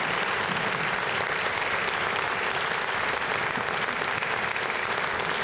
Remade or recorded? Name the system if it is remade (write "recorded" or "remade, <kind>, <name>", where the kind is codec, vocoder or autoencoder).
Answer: recorded